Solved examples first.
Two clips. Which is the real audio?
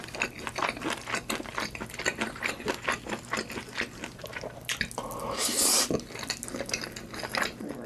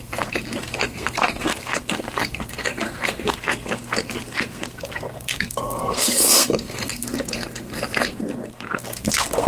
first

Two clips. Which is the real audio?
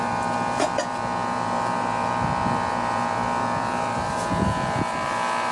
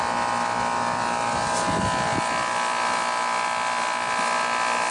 second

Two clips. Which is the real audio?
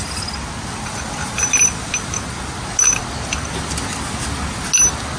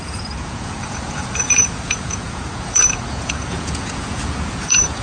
first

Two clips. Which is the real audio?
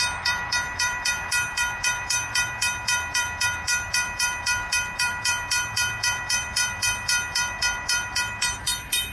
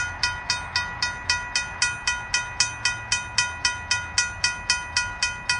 second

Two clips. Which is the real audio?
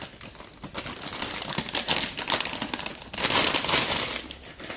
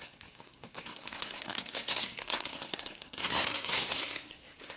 first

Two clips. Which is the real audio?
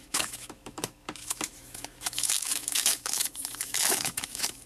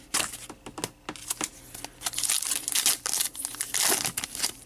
second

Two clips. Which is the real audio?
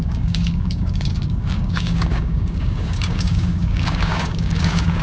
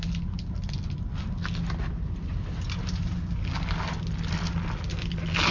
second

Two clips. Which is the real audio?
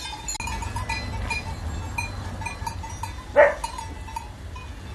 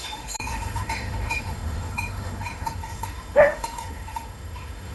first